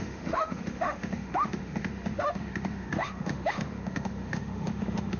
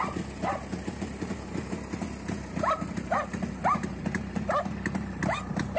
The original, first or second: second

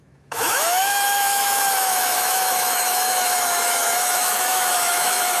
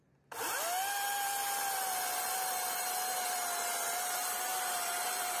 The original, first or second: second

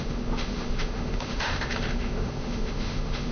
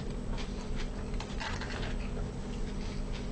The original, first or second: second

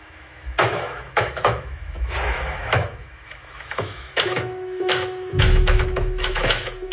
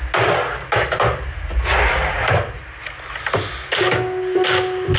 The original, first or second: second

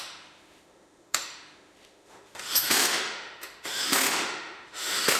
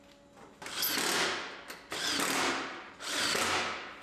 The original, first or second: second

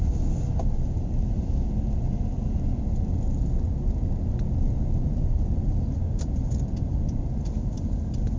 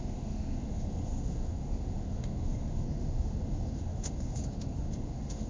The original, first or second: first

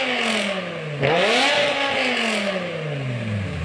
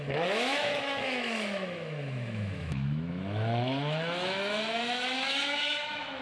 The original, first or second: first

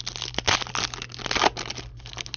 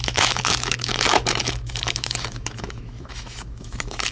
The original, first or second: first